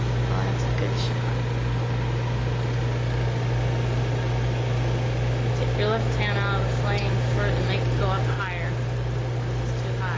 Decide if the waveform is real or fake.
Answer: real